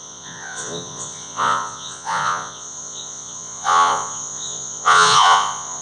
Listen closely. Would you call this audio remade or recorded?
remade